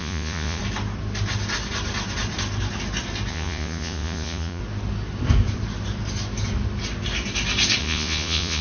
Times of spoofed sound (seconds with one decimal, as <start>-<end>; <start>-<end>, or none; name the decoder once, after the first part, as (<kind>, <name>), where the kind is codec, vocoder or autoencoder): 0.0-0.6 (vocoder, Vocos); 3.3-4.6; 7.8-8.6